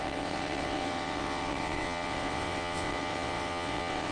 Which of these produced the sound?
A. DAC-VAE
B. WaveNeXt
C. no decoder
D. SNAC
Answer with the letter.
B